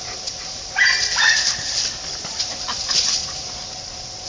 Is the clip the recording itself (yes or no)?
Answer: yes